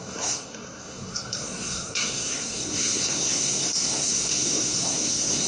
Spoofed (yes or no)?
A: yes